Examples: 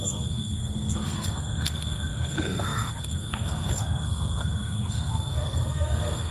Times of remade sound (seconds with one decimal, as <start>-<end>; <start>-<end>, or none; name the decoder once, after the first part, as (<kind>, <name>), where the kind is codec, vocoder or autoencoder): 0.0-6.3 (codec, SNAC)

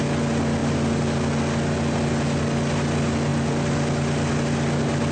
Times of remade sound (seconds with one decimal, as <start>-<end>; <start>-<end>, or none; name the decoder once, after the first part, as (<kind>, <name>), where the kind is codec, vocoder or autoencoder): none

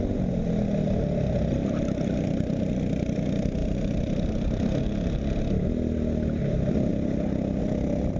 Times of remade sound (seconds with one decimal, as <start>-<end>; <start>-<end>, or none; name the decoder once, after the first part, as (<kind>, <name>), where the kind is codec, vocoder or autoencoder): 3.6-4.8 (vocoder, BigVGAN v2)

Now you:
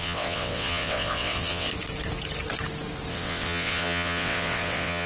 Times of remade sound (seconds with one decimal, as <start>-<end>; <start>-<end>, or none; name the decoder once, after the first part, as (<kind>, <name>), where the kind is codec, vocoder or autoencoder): 0.0-1.7 (vocoder, WaveNeXt); 3.1-5.1

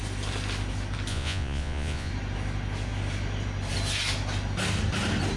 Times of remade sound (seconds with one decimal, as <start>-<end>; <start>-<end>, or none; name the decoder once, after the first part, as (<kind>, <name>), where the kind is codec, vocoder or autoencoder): 1.1-2.1 (vocoder, Vocos)

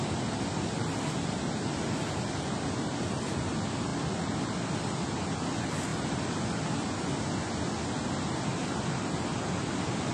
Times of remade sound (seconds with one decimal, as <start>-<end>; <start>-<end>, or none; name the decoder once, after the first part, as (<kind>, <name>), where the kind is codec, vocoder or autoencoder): none